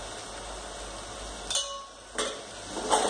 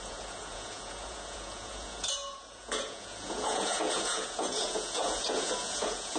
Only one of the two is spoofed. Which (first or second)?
second